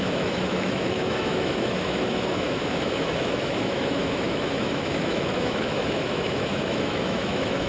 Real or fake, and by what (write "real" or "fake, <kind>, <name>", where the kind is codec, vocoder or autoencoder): fake, autoencoder, DAC-VAE